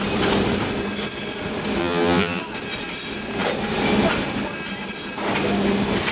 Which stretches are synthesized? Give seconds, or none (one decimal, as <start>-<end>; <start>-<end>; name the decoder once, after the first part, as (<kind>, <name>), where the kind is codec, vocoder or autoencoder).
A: 1.8-2.4 (vocoder, BigVGAN v2)